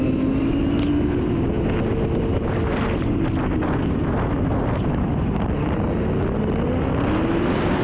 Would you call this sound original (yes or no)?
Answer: yes